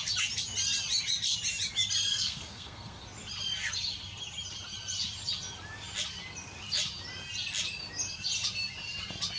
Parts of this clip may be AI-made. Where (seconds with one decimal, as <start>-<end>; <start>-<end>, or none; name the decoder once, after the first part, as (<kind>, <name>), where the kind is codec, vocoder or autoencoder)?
2.1-3.0 (codec, SNAC)